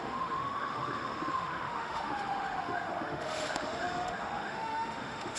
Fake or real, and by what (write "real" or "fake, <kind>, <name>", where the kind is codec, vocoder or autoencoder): fake, autoencoder, DAC-VAE